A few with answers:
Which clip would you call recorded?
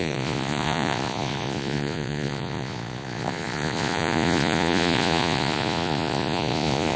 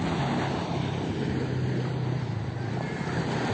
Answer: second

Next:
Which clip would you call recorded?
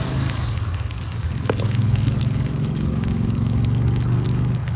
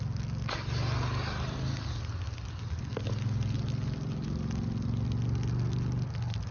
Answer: second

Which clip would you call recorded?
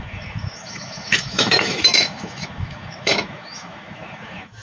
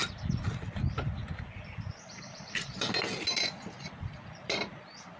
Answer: second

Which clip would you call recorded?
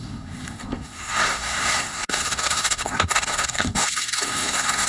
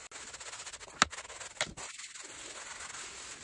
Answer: second